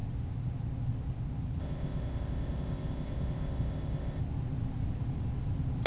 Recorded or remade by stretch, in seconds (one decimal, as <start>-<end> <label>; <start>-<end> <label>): 0.0-1.6 recorded; 1.6-4.2 remade; 4.2-5.9 recorded